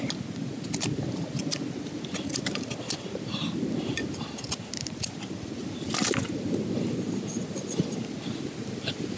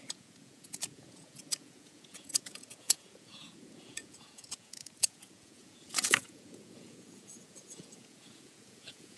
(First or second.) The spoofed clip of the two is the second